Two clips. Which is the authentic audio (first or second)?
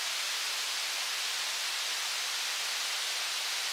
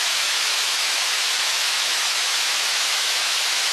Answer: first